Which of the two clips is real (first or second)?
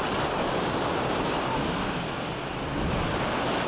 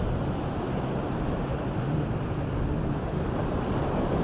second